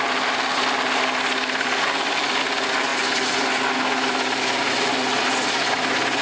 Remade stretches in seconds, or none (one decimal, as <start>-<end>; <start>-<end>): none